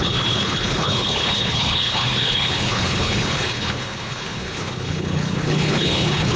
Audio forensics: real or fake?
fake